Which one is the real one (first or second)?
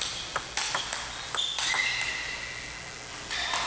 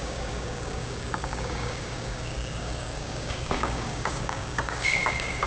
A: first